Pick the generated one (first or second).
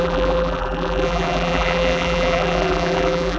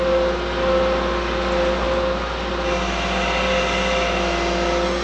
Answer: first